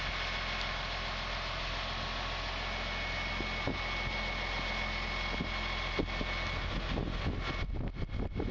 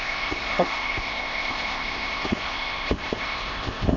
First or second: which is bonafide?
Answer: first